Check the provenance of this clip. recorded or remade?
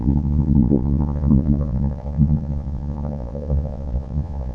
remade